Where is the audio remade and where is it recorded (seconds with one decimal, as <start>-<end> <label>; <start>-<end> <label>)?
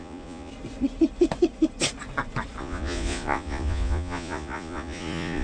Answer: 0.0-0.5 remade; 0.5-2.6 recorded; 2.6-5.4 remade